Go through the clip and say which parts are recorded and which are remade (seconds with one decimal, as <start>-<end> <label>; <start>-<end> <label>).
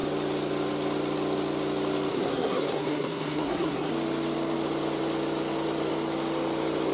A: 0.0-2.1 recorded; 2.1-3.9 remade; 3.9-6.9 recorded